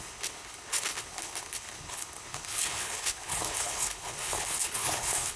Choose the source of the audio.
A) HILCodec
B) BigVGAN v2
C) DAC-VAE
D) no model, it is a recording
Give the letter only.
A